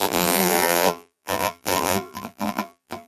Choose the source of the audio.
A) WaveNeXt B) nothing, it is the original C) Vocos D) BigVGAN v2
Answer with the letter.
D